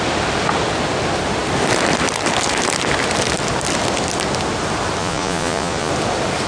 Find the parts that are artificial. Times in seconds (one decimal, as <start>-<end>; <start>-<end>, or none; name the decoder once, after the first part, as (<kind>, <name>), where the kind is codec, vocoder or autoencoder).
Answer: 5.0-5.9 (vocoder, Vocos)